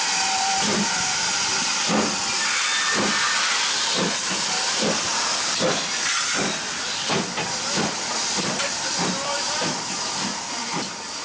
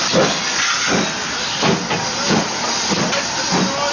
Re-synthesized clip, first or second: first